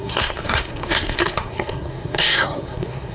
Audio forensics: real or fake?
fake